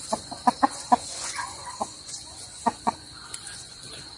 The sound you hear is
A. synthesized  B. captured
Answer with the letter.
A